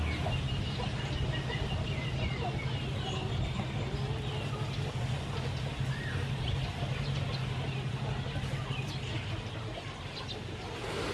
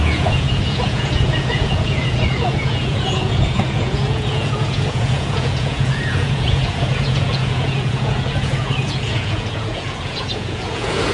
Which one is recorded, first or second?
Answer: first